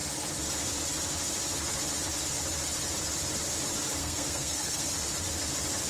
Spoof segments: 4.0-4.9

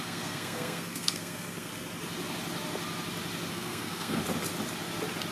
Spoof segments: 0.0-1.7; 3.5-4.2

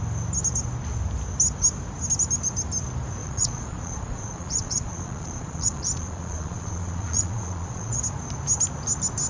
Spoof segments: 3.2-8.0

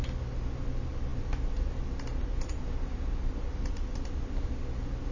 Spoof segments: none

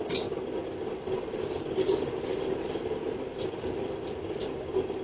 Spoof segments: none

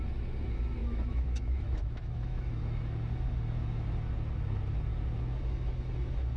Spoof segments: 0.8-2.5

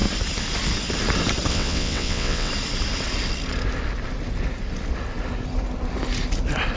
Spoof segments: 1.5-2.5